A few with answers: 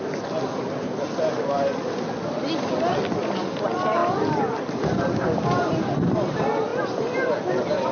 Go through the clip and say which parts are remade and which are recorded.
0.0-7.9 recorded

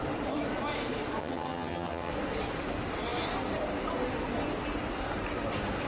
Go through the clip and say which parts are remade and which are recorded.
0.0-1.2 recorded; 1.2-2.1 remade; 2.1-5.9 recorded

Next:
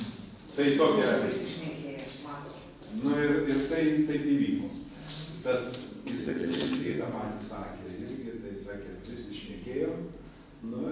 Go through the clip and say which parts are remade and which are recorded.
0.0-6.2 recorded; 6.2-7.0 remade; 7.0-10.9 recorded